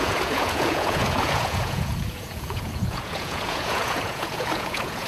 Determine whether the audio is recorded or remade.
remade